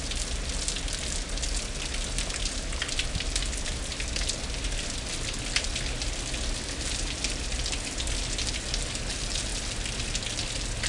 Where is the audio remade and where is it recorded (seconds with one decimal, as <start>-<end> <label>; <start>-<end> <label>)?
0.0-10.9 recorded